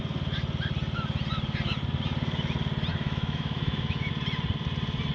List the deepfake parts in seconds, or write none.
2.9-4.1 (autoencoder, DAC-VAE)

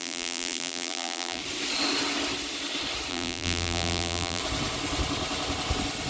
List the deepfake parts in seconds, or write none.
0.0-1.4 (vocoder, BigVGAN v2); 3.1-4.4

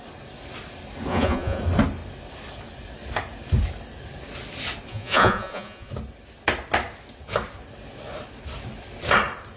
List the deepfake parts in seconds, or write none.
1.1-1.6 (vocoder, Vocos); 4.9-5.9

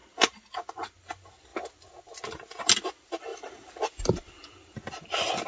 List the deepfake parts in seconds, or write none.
none

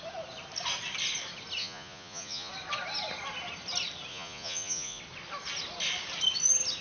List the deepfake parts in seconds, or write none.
1.6-2.5 (vocoder, Vocos); 4.1-5.0

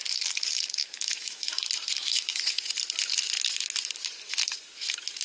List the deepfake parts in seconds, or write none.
0.8-1.6 (autoencoder, DAC-VAE); 2.0-2.5

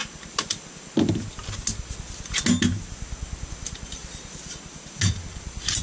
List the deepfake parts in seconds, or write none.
3.5-4.0 (vocoder, BigVGAN v2); 5.1-5.8

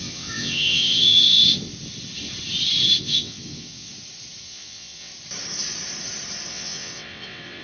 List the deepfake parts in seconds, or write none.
0.0-1.4 (vocoder, WaveNeXt); 3.0-3.9; 4.4-5.1; 6.5-7.6